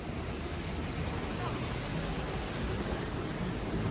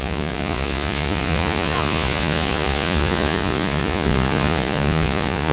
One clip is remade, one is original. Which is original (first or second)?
first